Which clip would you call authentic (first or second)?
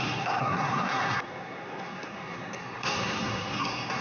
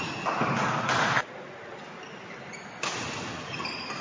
second